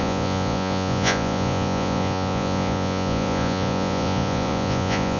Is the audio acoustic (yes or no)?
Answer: no